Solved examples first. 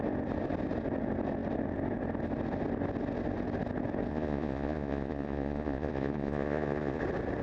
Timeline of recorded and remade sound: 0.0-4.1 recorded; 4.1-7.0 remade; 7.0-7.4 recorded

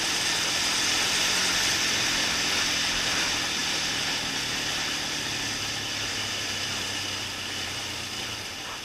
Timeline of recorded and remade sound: 0.0-8.8 recorded

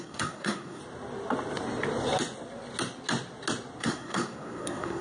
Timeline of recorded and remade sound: 0.0-0.8 remade; 0.8-3.8 recorded; 3.8-5.0 remade